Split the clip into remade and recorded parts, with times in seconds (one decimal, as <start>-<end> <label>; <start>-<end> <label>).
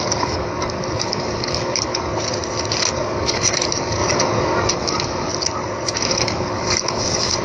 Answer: 0.0-2.1 remade; 2.1-2.9 recorded; 2.9-5.3 remade; 5.3-6.0 recorded; 6.0-7.4 remade